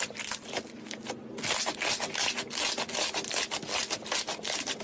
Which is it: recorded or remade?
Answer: recorded